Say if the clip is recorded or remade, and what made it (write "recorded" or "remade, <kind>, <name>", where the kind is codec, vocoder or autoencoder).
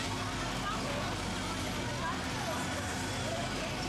recorded